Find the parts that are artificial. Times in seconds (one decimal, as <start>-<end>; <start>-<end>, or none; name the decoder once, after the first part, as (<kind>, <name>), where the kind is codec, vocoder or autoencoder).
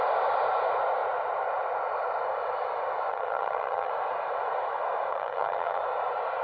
3.1-3.9 (vocoder, HiFi-GAN); 5.1-5.8